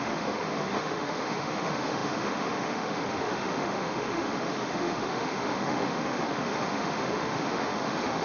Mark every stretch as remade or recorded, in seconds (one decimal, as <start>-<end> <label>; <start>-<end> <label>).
0.0-8.2 remade